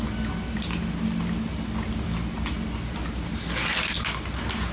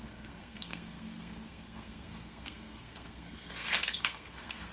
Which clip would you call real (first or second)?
first